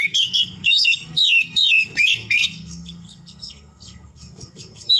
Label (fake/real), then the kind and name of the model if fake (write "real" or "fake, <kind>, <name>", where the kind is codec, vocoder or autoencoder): fake, codec, SNAC